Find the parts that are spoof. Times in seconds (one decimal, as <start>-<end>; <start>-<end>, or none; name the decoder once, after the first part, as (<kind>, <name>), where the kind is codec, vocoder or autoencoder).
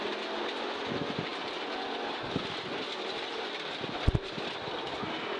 none